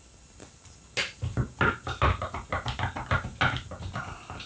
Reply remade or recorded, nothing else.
recorded